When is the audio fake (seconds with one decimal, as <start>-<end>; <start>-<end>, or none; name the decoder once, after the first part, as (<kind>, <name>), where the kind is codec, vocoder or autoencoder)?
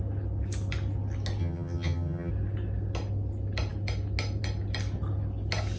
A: 1.4-2.3 (vocoder, HiFi-GAN)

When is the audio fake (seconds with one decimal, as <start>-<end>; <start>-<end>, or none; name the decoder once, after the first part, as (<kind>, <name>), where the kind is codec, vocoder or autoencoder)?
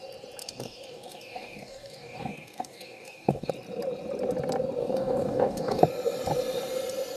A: 0.4-3.5 (codec, DAC); 4.8-5.8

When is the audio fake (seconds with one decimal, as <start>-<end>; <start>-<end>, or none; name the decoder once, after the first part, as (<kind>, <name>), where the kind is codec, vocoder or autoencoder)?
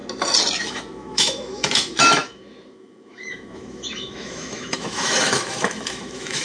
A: 0.6-6.4 (autoencoder, DAC-VAE)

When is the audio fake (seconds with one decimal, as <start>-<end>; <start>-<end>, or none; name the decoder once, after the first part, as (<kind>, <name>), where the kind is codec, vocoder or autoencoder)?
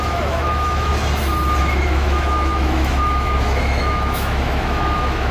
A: 0.0-0.9 (autoencoder, DAC-VAE); 1.6-5.3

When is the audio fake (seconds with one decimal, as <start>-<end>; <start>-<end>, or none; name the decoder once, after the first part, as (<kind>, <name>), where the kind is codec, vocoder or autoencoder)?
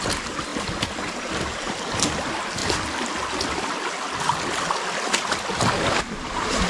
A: none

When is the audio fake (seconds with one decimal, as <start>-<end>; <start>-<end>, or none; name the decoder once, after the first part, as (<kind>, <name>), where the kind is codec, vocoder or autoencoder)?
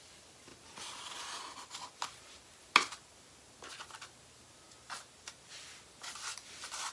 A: none